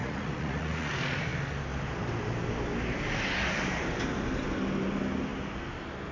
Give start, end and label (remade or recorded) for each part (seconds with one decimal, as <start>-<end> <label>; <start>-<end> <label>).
0.0-0.9 remade; 0.9-6.1 recorded